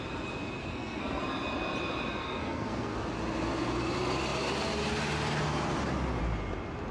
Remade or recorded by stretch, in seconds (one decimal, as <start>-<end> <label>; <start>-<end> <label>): 0.0-0.6 recorded; 0.6-1.2 remade; 1.2-2.2 recorded; 2.2-3.0 remade; 3.0-6.9 recorded